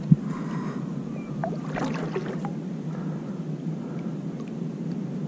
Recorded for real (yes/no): yes